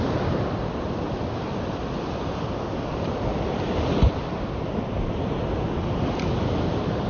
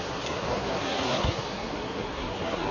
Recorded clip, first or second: first